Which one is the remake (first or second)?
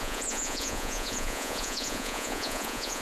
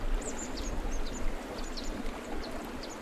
first